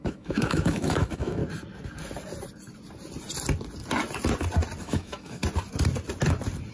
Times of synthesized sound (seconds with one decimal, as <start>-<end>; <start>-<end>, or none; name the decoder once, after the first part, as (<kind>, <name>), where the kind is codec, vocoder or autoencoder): 0.0-1.4 (autoencoder, DAC-VAE); 4.8-5.4